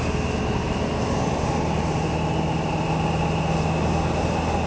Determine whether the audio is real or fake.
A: real